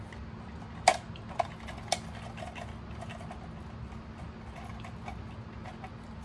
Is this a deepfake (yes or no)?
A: no